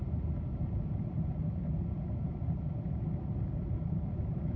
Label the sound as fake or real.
real